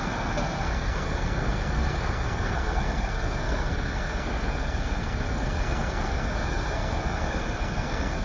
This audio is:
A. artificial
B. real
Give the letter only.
A